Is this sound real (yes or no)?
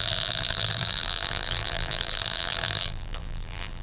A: no